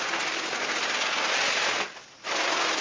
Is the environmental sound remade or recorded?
recorded